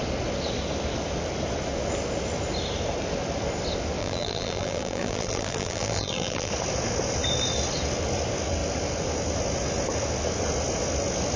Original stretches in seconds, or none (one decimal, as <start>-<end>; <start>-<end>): 0.0-4.0; 6.5-11.4